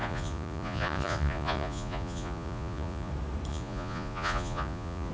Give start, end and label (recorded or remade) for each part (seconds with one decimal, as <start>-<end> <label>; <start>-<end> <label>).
0.0-3.1 remade; 3.1-3.5 recorded; 3.5-5.1 remade